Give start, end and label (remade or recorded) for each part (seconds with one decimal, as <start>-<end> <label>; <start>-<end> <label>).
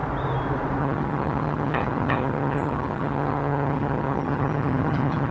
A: 0.0-0.8 recorded; 0.8-5.3 remade